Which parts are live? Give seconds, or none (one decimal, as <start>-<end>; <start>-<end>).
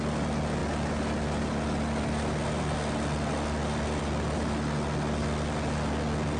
0.0-6.4